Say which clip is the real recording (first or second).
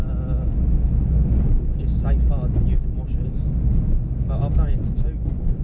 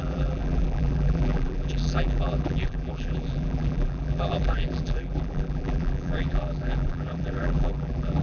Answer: first